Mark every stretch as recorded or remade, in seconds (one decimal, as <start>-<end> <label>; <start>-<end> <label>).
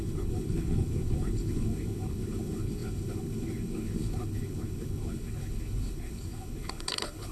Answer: 0.0-7.3 remade